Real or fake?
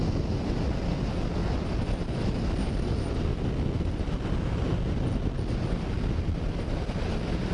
real